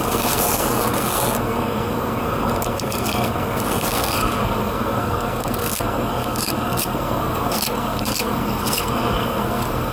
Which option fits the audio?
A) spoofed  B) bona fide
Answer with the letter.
A